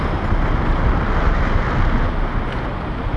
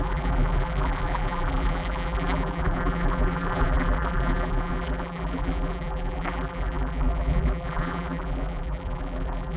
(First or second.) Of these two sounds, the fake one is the second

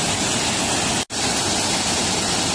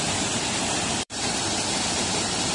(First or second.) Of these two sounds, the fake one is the second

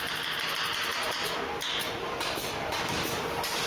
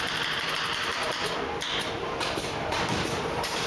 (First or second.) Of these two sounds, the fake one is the second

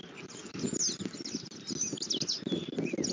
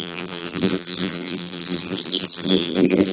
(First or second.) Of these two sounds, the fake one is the second